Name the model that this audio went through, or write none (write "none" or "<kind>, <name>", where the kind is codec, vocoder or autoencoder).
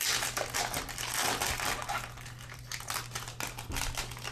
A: none